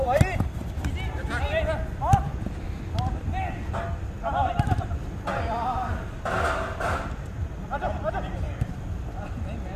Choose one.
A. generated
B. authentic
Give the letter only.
B